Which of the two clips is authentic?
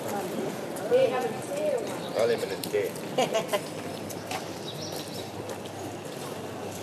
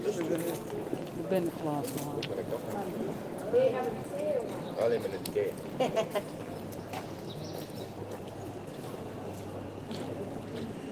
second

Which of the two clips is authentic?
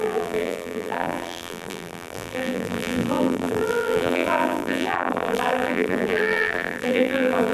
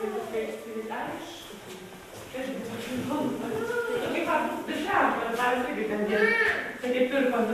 second